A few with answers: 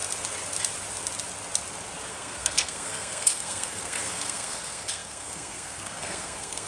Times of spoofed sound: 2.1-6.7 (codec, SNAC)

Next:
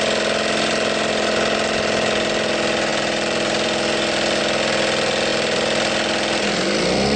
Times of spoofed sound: 2.9-4.4 (vocoder, BigVGAN v2); 5.3-7.2

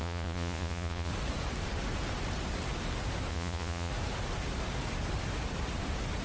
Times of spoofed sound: 0.0-1.1 (vocoder, Vocos); 3.3-3.9

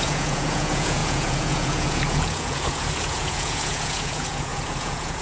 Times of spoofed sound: 0.0-5.2 (vocoder, Vocos)